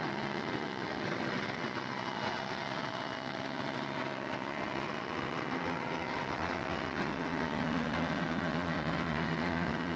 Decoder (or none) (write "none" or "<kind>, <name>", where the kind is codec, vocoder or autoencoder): vocoder, WaveNeXt